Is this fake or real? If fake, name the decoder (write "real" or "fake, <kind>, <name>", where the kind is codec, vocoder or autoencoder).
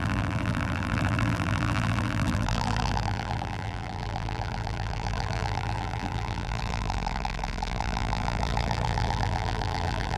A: fake, vocoder, BigVGAN v2